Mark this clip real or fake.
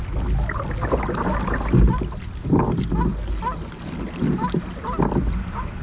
real